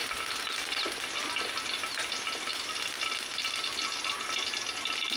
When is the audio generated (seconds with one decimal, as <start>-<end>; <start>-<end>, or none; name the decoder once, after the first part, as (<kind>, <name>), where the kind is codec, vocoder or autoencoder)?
none